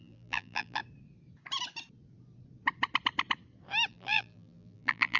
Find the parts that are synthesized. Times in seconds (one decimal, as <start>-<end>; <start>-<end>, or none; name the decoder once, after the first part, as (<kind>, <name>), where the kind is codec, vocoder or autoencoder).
0.0-0.8 (vocoder, BigVGAN v2); 3.9-5.2